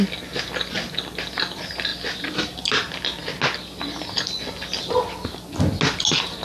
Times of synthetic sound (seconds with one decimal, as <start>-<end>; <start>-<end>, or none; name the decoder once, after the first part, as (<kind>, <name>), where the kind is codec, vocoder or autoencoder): none